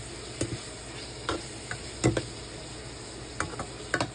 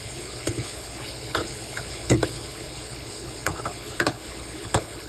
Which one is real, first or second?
first